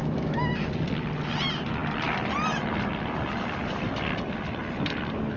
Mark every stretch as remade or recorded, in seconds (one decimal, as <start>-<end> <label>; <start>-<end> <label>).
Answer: 0.0-0.7 remade; 0.7-5.4 recorded